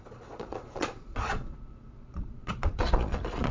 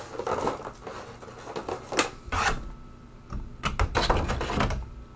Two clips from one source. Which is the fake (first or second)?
first